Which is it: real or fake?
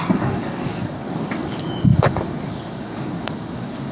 fake